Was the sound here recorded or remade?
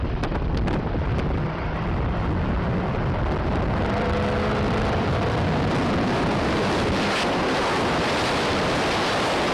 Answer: remade